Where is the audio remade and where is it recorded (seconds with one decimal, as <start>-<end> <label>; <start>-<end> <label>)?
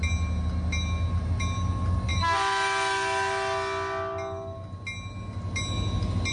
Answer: 0.0-6.3 recorded